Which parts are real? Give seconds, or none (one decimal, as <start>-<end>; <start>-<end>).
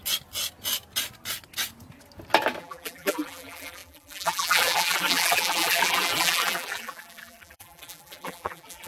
0.0-2.6